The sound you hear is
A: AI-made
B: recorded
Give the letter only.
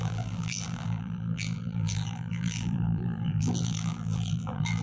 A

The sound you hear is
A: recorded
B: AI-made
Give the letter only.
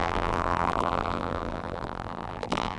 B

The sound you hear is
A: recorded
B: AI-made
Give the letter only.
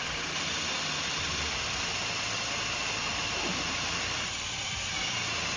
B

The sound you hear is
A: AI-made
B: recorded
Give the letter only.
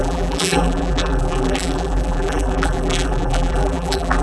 A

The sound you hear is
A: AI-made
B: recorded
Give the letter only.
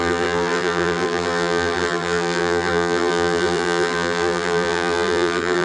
A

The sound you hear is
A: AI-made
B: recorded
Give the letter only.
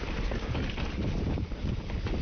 A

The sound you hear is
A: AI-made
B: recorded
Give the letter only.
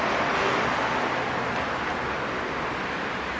B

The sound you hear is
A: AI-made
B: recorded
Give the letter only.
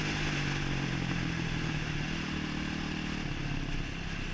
B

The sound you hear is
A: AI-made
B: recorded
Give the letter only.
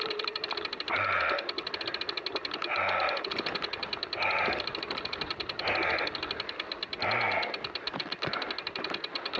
B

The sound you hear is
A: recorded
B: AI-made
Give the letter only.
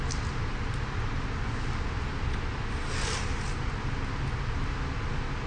A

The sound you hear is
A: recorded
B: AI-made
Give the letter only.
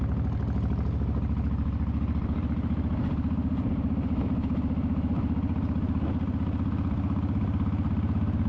A